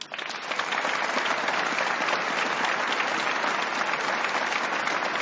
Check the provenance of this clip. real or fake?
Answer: real